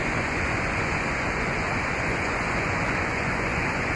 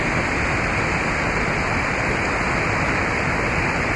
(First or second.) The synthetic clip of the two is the first